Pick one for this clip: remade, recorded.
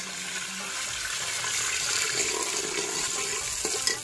recorded